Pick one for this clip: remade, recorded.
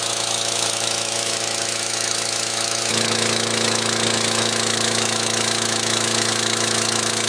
remade